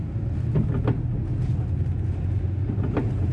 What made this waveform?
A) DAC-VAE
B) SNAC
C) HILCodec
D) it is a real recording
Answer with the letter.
D